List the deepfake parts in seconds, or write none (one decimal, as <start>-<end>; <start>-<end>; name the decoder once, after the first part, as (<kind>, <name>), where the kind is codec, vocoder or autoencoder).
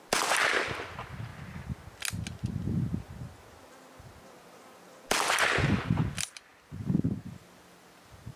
none